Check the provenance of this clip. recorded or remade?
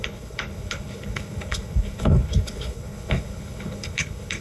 remade